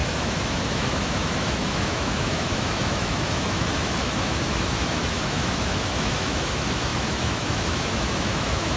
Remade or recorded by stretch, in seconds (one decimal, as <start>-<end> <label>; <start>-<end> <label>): 0.0-8.8 remade